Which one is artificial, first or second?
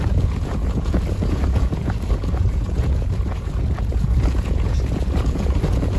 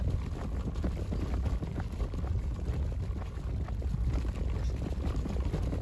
first